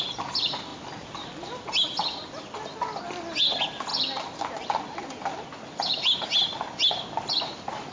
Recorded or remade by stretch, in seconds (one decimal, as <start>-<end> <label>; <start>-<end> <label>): 0.0-7.9 recorded